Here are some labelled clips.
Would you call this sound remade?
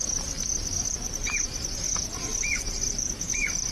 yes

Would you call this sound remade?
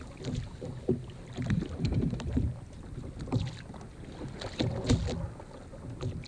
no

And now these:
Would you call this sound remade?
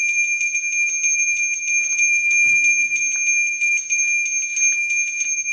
no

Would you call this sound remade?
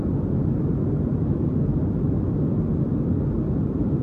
no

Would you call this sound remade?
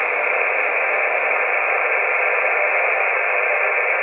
no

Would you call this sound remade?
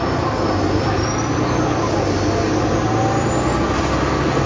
no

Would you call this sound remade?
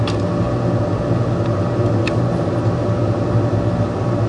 no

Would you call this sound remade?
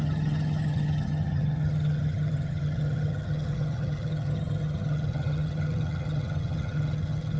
yes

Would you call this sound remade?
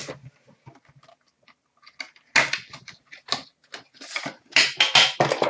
no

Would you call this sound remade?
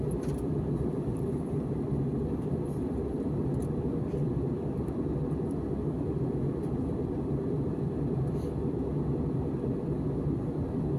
no